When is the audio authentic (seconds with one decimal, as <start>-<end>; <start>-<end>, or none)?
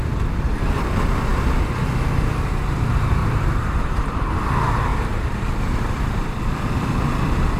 0.0-3.2; 4.3-4.9; 6.4-7.6